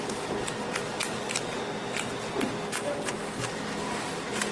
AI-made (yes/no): no